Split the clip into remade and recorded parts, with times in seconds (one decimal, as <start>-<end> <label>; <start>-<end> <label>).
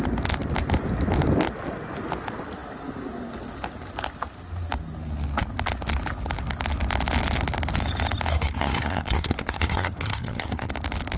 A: 0.0-8.3 recorded; 8.3-10.7 remade; 10.7-11.2 recorded